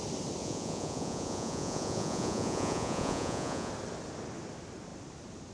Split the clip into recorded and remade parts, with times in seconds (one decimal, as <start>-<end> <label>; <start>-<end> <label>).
0.0-0.4 recorded; 0.4-3.7 remade; 3.7-5.5 recorded